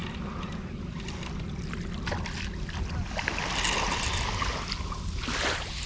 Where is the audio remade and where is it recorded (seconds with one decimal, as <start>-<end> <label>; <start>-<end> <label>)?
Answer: 0.0-5.9 recorded